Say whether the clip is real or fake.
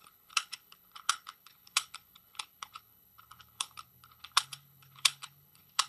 fake